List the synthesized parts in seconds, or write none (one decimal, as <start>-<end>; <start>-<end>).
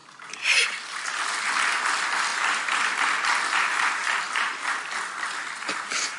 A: none